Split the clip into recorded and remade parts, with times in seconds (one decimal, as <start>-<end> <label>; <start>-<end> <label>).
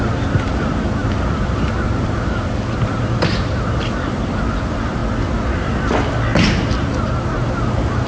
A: 0.0-5.0 remade; 5.0-6.4 recorded; 6.4-8.1 remade